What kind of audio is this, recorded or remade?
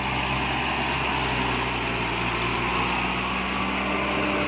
recorded